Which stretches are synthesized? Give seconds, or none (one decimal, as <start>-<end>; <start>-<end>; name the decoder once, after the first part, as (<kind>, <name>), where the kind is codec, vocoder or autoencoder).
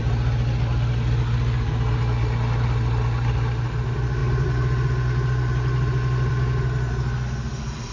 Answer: none